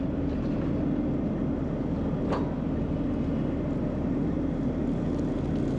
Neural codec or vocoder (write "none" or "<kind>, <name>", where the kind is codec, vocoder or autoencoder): none